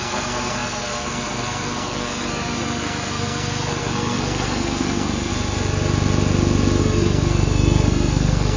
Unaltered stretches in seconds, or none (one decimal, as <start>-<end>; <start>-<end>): 5.3-6.8